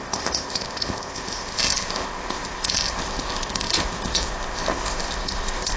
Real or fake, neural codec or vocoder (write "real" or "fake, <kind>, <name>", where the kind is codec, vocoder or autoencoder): fake, codec, ZipCodec